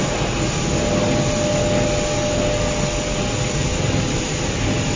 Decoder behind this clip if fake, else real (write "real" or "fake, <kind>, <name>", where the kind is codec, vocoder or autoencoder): real